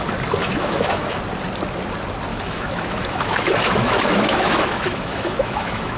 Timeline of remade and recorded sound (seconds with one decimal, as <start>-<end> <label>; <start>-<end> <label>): 0.0-0.4 recorded; 0.4-1.2 remade; 1.2-2.3 recorded; 2.3-6.0 remade